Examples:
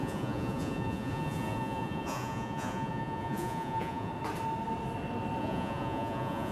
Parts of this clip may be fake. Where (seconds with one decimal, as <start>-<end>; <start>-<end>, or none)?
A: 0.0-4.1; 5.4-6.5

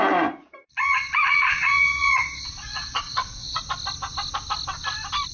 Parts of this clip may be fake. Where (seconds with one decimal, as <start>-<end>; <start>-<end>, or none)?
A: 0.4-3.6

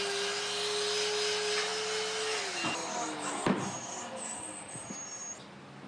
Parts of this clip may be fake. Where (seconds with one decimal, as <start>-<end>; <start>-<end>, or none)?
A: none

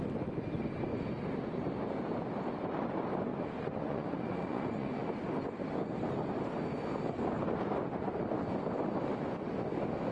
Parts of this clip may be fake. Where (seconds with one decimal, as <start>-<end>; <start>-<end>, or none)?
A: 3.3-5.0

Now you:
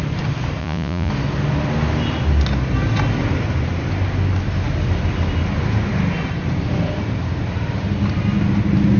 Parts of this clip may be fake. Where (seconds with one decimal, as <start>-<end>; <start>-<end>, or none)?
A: 0.6-1.1